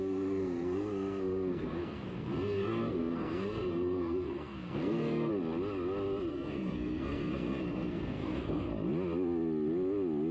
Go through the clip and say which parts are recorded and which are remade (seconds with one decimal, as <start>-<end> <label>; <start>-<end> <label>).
0.0-5.3 remade; 5.3-6.3 recorded; 6.3-8.7 remade; 8.7-10.3 recorded